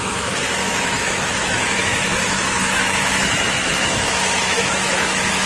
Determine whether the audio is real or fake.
fake